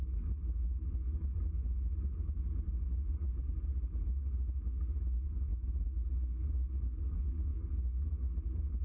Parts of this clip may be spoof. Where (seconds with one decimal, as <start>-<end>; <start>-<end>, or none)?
3.1-3.6